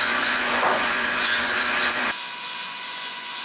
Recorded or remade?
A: remade